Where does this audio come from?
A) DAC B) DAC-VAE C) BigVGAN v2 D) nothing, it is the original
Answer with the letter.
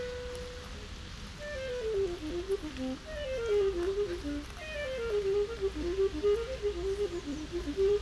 D